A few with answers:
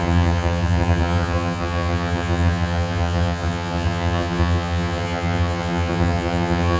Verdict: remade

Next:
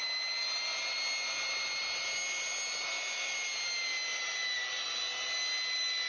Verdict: recorded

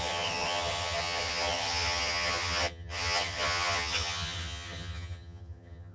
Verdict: remade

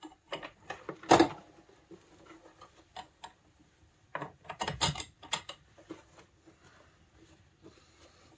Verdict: recorded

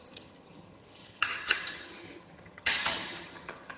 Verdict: remade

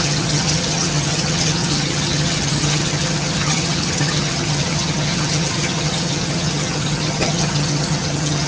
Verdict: remade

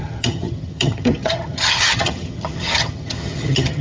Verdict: remade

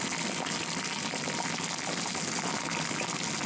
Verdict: recorded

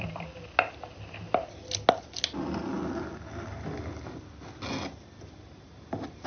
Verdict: recorded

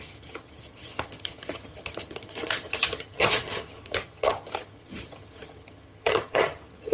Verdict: remade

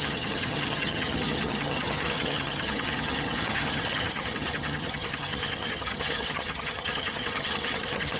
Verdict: remade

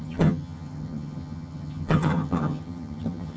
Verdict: remade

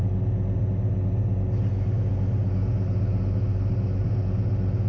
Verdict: recorded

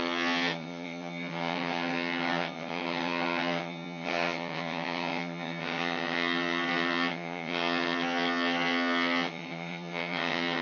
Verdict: remade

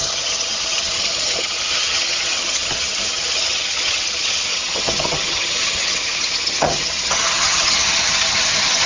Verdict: remade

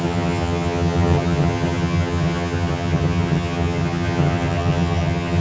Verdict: remade